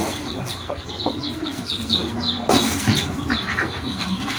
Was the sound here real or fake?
fake